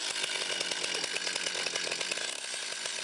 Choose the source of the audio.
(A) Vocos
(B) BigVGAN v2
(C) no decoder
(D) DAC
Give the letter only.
C